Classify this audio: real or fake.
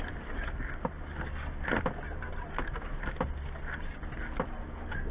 real